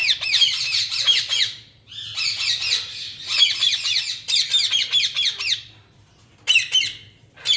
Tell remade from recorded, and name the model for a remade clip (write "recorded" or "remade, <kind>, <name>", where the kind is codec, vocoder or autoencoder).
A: recorded